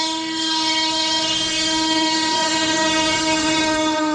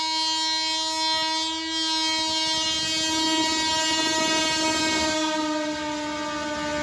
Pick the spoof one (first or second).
first